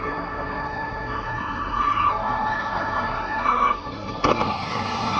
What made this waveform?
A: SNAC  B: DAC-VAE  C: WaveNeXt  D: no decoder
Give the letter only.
A